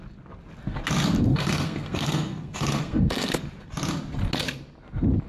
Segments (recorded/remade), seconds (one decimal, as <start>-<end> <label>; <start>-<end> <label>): 0.0-1.3 recorded; 1.3-3.3 remade; 3.3-5.3 recorded